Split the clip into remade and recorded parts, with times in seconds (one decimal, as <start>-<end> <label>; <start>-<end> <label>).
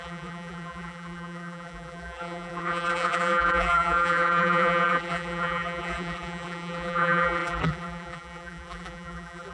0.0-9.5 remade